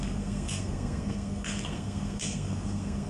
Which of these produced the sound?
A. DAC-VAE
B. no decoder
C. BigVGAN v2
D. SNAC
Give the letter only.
D